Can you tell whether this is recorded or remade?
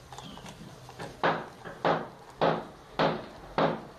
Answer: recorded